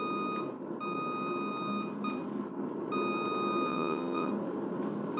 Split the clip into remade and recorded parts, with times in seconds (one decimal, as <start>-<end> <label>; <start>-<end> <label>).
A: 0.0-3.7 recorded; 3.7-4.3 remade; 4.3-5.2 recorded